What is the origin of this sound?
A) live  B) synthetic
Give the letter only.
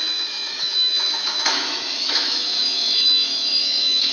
B